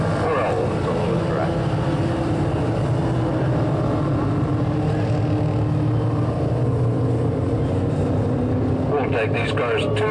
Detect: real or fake real